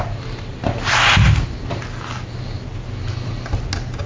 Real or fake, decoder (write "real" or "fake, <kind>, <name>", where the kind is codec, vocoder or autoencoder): real